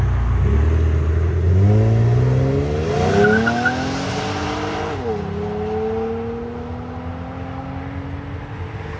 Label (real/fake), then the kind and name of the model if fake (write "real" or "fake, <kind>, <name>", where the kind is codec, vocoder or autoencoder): real